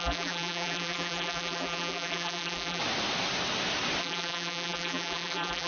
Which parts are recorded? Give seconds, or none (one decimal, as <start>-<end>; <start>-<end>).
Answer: 2.8-4.0